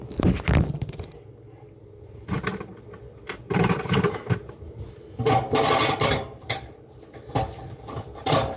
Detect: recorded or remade remade